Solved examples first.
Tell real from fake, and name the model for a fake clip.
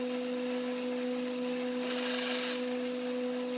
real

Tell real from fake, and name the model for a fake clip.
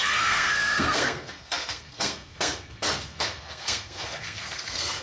fake, codec, SNAC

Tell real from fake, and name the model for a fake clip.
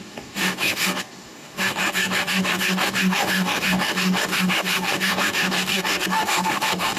fake, codec, DAC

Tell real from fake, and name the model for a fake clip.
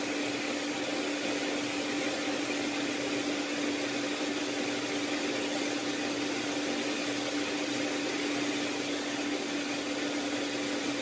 real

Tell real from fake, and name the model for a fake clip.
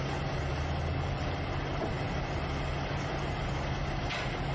real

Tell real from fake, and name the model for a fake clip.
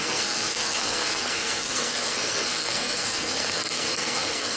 fake, codec, SNAC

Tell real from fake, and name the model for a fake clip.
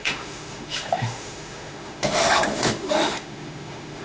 fake, autoencoder, DAC-VAE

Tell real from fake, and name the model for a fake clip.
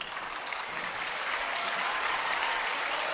fake, codec, DAC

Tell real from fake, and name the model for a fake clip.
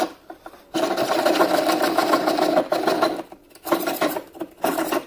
fake, vocoder, BigVGAN v2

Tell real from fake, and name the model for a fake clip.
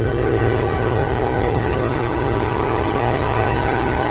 fake, vocoder, HiFi-GAN